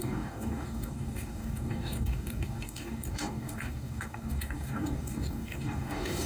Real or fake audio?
fake